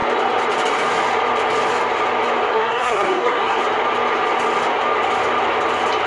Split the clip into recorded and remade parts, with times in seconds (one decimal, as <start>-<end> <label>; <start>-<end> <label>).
0.0-2.5 recorded; 2.5-3.6 remade; 3.6-6.1 recorded